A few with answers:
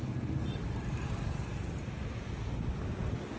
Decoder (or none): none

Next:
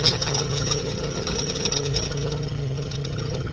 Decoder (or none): vocoder, HiFi-GAN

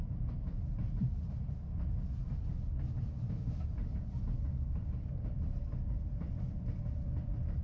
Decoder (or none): none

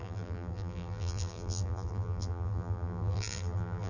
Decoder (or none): vocoder, BigVGAN v2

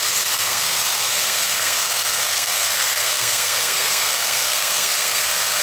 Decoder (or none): codec, SNAC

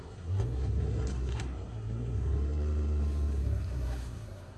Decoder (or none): codec, SNAC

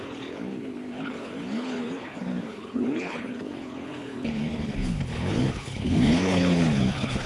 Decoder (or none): codec, HILCodec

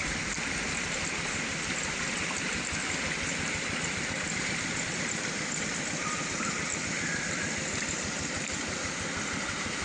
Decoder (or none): none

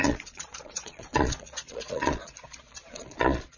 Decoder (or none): vocoder, Vocos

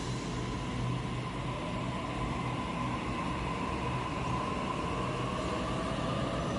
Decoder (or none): none